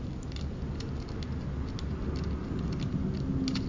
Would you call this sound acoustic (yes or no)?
yes